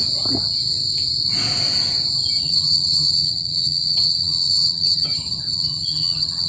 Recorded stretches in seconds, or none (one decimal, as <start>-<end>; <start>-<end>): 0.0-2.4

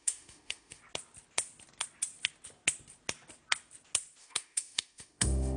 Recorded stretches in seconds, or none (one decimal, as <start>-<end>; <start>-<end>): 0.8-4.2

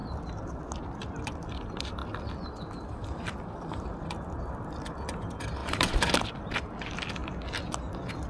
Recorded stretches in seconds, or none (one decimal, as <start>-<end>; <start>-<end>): 0.0-0.8; 2.0-2.5; 5.6-6.3; 7.2-8.3

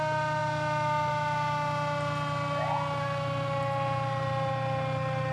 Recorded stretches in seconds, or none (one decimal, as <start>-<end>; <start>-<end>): 0.0-5.3

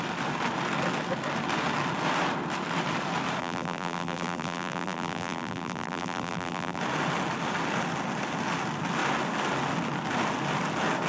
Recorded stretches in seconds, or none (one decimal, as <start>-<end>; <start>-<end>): 0.0-3.4; 6.8-11.1